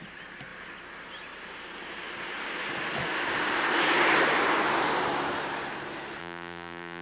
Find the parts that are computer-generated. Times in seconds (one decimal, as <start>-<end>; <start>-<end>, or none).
6.2-7.0